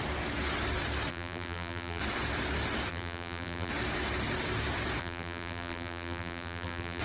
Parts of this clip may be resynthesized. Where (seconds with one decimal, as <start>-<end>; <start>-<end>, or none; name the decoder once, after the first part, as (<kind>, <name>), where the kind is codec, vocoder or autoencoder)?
1.1-2.0 (vocoder, BigVGAN v2); 2.9-3.7; 5.0-7.0